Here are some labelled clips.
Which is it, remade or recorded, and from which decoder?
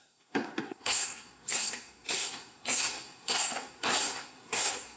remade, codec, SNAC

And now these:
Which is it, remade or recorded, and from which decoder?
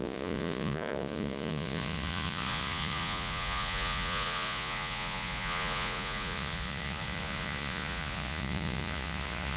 remade, vocoder, Vocos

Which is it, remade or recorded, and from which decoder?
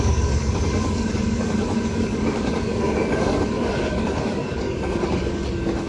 remade, codec, DAC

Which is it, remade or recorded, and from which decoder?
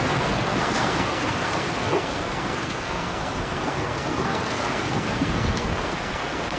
remade, codec, SNAC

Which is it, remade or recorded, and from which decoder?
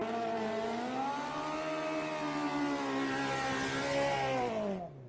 recorded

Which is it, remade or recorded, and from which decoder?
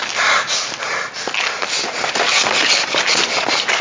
recorded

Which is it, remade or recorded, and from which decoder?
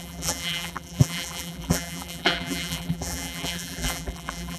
remade, vocoder, BigVGAN v2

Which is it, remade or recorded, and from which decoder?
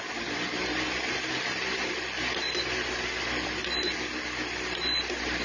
recorded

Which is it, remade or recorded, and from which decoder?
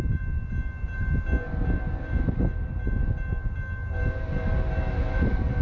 recorded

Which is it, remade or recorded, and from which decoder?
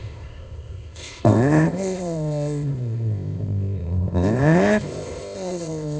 remade, codec, ZipCodec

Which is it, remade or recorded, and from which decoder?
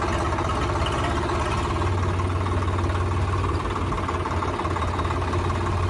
recorded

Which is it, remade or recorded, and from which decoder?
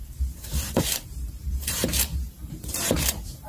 remade, vocoder, BigVGAN v2